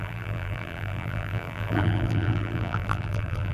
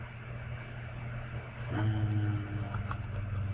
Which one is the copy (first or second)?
first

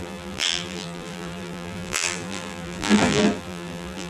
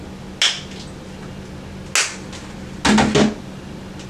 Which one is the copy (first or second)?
first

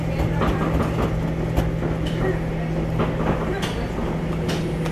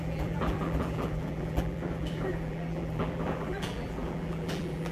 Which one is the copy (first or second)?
second